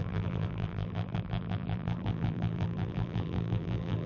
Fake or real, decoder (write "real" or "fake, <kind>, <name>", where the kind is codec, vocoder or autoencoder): fake, vocoder, BigVGAN v2